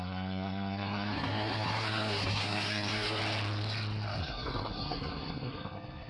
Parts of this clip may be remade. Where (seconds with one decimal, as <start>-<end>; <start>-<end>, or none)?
0.0-3.2; 4.2-6.1